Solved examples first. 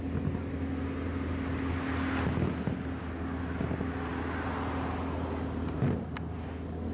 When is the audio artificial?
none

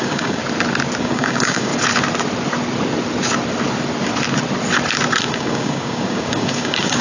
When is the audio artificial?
0.0-0.4 (codec, DAC); 1.0-1.7; 5.2-7.0